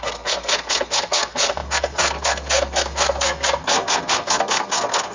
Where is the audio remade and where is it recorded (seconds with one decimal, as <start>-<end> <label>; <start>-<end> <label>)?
0.0-5.1 remade